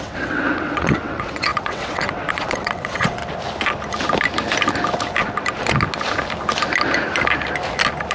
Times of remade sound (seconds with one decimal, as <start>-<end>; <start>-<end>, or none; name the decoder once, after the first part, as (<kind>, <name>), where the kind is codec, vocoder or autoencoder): 0.0-3.2 (vocoder, WaveNeXt)